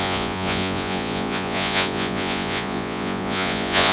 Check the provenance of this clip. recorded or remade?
remade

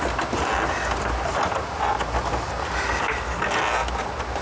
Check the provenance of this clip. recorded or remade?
recorded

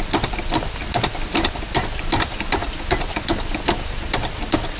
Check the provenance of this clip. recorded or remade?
recorded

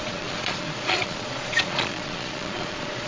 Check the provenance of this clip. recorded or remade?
remade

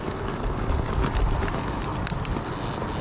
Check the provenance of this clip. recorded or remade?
recorded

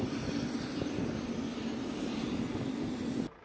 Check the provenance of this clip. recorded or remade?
recorded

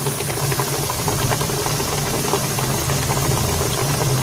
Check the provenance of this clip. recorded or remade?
recorded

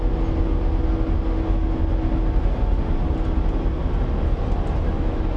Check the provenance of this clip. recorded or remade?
recorded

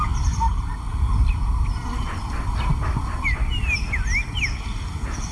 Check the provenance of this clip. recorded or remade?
recorded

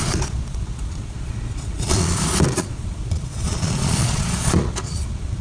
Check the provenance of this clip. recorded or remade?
remade